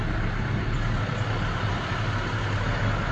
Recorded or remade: recorded